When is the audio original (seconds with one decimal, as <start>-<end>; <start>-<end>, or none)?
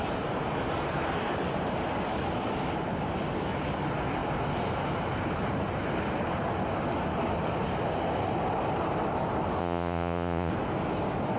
0.0-9.6; 10.5-11.4